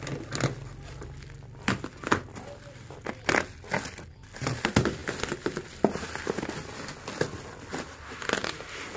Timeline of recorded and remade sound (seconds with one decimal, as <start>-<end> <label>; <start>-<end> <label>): 0.0-9.0 recorded